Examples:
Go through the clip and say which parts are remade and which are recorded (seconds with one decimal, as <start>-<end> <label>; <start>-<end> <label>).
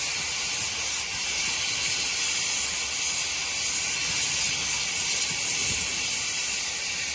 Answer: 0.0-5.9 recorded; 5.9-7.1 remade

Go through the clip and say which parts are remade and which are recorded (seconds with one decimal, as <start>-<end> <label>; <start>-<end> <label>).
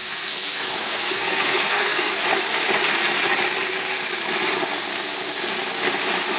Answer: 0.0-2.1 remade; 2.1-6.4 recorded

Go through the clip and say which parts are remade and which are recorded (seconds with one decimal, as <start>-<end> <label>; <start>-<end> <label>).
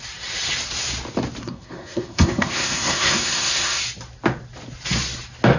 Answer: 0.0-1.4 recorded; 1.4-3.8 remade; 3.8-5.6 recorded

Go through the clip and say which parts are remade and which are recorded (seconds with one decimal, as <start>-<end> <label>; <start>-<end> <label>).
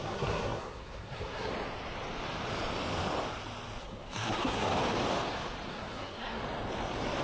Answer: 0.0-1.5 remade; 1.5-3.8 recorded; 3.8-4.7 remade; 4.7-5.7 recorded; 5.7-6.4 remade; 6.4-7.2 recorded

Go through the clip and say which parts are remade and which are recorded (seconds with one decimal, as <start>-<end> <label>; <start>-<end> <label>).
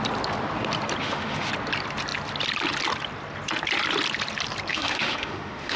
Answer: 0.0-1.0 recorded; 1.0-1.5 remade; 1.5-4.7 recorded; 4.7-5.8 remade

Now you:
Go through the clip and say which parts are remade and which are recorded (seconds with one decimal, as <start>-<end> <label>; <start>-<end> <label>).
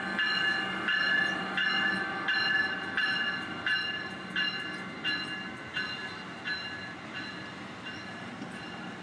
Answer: 0.0-9.0 recorded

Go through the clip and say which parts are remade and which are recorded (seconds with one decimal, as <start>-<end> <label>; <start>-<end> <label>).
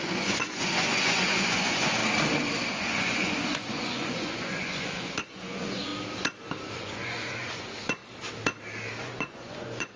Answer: 0.0-2.0 remade; 2.0-2.7 recorded; 2.7-5.9 remade; 5.9-6.7 recorded; 6.7-8.0 remade; 8.0-9.0 recorded; 9.0-10.0 remade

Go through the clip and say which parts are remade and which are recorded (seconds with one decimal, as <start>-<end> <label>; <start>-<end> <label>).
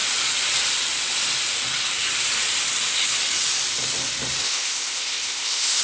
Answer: 0.0-4.4 recorded; 4.4-5.8 remade